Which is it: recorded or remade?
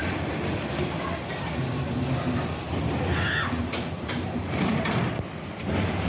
recorded